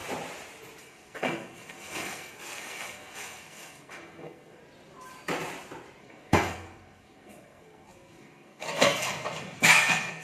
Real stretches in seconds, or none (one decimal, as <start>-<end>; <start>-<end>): 0.0-0.8; 4.6-6.0